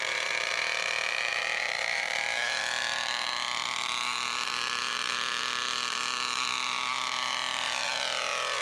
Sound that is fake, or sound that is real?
fake